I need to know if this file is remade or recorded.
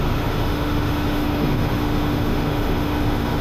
remade